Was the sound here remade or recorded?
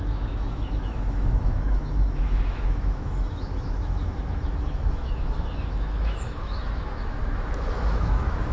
remade